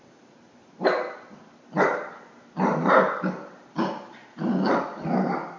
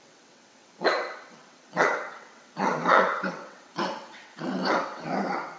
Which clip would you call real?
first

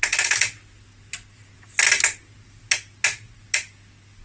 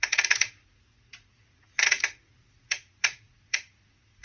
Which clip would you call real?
first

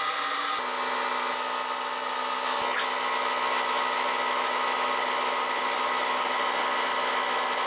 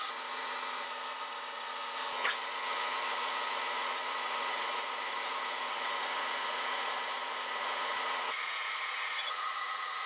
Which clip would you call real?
first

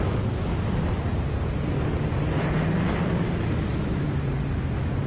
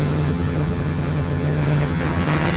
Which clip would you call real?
first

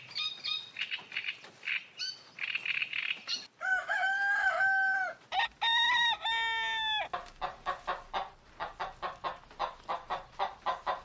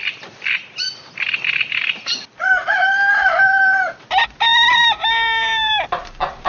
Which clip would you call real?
first